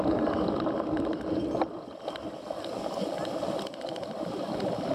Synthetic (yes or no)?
yes